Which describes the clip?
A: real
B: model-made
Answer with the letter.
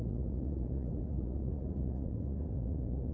B